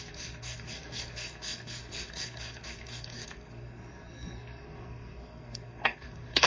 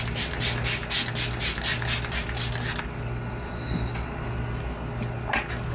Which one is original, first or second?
second